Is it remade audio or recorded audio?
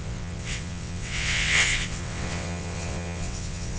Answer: remade